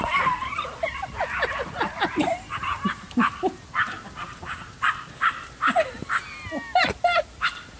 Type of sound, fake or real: fake